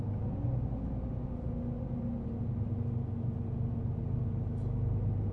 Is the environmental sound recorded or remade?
recorded